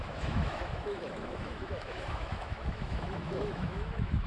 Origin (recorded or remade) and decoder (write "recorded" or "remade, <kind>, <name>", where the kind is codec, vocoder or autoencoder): remade, autoencoder, DAC-VAE